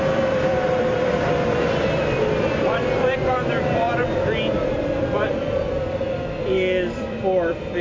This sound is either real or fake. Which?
fake